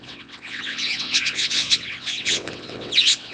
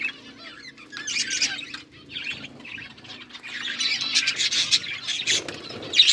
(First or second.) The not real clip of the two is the first